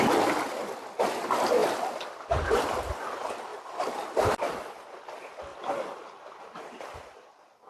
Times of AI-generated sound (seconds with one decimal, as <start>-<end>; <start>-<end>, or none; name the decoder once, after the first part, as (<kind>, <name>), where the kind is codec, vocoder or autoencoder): 3.5-4.2 (vocoder, BigVGAN v2); 5.5-7.3